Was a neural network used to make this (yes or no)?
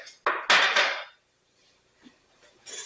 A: no